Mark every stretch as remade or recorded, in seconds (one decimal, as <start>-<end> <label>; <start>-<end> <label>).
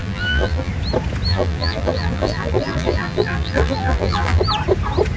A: 0.0-0.7 remade; 0.7-1.3 recorded; 1.3-4.4 remade; 4.4-5.2 recorded